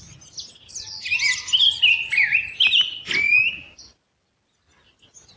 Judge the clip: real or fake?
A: real